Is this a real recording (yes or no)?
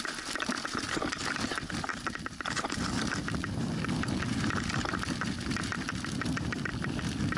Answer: yes